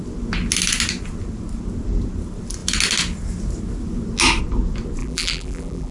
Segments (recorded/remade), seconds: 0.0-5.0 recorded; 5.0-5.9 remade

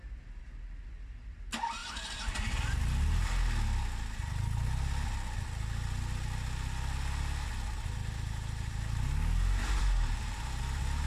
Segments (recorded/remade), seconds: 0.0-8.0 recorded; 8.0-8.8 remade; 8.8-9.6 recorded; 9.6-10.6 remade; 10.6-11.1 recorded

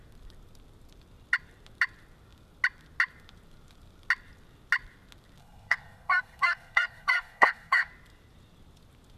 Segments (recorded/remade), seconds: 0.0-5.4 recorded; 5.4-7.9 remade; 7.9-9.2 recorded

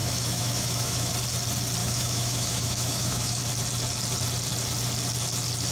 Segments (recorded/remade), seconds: 0.0-1.1 remade; 1.1-1.8 recorded; 1.8-3.4 remade; 3.4-5.7 recorded

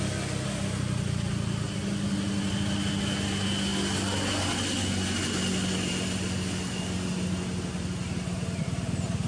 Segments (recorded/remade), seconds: 0.0-9.3 recorded

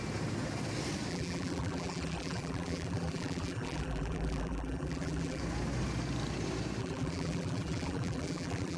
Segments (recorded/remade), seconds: 0.0-1.1 recorded; 1.1-5.4 remade; 5.4-6.8 recorded; 6.8-8.8 remade

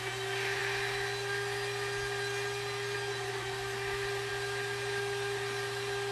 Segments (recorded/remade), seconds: 0.0-6.1 recorded

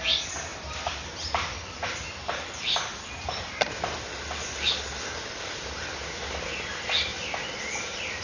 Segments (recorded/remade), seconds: 0.0-0.5 recorded; 0.5-3.1 remade; 3.1-7.1 recorded; 7.1-7.6 remade; 7.6-8.2 recorded